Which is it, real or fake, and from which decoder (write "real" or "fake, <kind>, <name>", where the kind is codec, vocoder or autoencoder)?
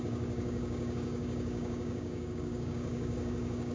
fake, codec, DAC